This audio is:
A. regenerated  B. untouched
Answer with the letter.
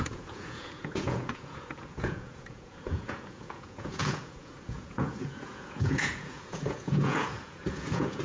A